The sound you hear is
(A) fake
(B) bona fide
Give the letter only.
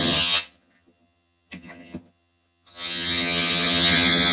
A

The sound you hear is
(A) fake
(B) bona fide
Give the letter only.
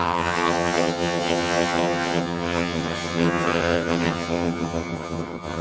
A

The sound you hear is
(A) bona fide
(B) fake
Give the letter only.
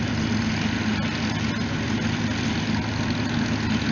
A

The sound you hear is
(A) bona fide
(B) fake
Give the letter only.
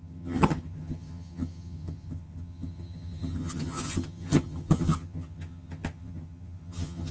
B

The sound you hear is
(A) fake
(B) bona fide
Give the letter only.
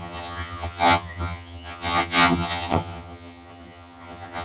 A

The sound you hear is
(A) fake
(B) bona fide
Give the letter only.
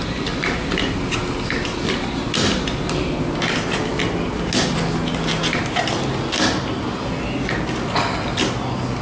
B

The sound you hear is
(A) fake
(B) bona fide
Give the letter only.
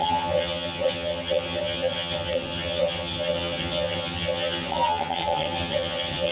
A